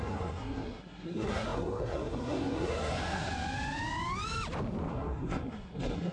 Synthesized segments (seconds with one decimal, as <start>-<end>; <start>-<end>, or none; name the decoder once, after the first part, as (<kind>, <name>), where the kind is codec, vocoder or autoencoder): 0.0-3.3 (codec, SNAC); 4.9-6.1